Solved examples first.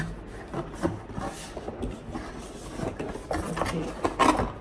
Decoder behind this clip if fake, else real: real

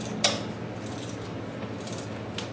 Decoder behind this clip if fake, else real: real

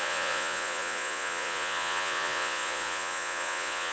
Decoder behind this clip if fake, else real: fake, vocoder, Vocos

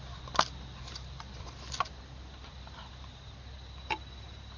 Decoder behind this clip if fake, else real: real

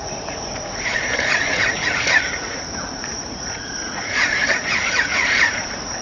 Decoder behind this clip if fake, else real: fake, vocoder, Vocos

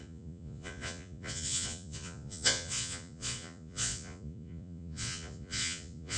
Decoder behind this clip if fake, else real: fake, vocoder, Vocos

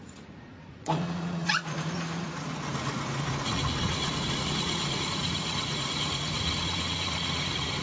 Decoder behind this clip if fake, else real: fake, vocoder, Vocos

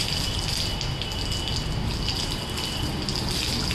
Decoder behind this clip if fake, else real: real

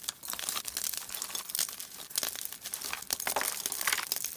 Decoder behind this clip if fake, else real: real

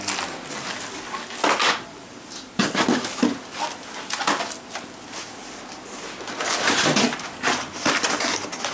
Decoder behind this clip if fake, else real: real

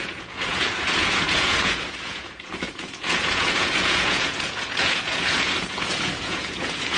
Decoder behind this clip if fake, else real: fake, vocoder, Vocos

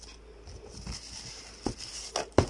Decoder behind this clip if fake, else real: real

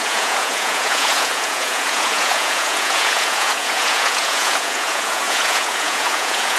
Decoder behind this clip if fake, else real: fake, vocoder, Vocos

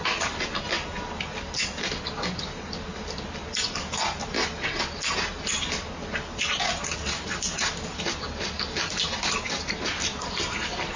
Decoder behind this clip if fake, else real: real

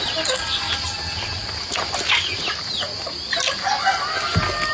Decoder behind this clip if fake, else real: real